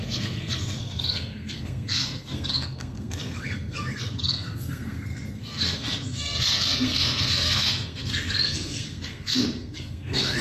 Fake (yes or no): yes